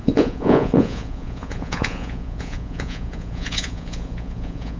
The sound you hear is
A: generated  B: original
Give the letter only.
A